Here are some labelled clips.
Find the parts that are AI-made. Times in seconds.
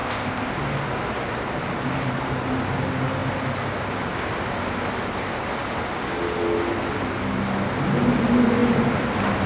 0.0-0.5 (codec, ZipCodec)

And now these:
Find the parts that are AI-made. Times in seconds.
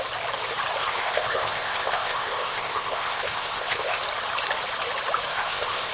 0.8-4.0 (codec, ZipCodec); 5.3-5.9